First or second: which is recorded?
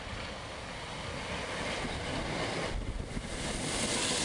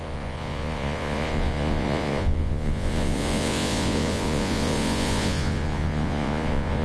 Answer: first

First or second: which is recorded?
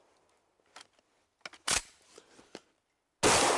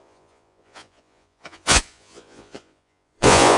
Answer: first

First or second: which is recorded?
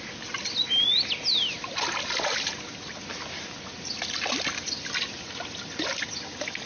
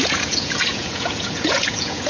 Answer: first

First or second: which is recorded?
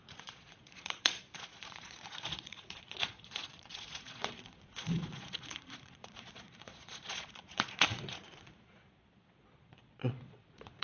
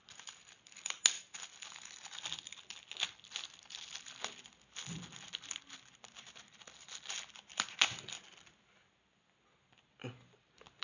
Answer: second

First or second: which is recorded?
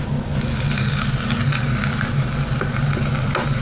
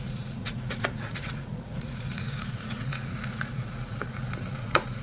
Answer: first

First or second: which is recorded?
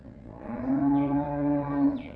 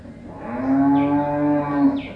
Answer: second